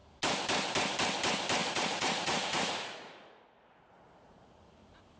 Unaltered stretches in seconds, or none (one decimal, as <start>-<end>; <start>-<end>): 0.0-1.6; 4.7-5.2